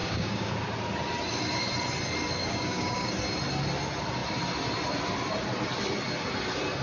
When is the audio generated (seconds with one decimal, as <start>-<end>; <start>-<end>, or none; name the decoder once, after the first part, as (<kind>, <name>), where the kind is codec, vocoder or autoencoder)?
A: 0.0-0.5 (codec, DAC); 2.4-3.1